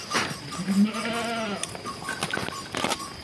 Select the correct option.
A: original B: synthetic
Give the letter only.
A